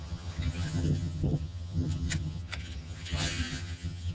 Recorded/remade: remade